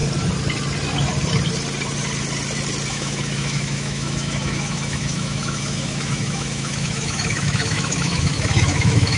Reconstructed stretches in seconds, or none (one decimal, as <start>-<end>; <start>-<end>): 2.9-9.2